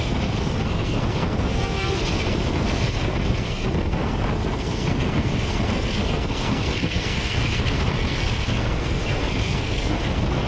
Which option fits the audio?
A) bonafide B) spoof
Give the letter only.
B